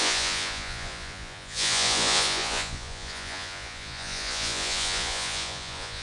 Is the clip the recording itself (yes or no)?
no